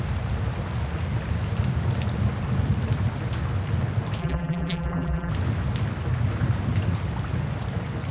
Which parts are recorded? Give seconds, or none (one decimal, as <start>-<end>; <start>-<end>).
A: 0.0-4.2; 5.3-8.1